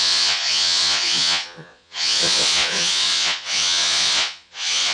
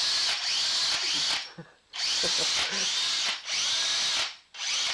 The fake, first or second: first